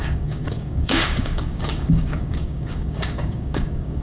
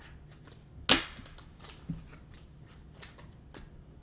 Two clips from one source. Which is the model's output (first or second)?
first